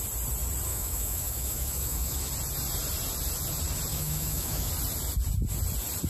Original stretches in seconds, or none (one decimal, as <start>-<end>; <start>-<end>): 0.0-0.7; 2.3-3.9; 4.7-6.1